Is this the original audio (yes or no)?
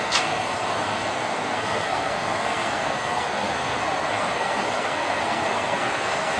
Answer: no